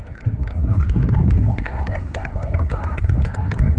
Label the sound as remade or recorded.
remade